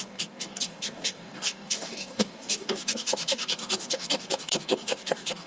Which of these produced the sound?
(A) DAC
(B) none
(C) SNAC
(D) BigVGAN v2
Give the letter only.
A